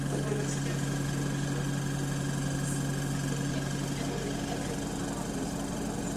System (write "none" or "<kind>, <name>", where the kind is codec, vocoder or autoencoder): none